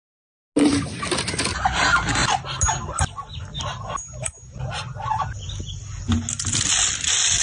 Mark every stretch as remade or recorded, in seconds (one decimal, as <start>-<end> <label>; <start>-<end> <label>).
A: 0.0-7.4 recorded